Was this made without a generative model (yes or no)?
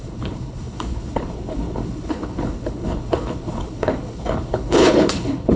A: no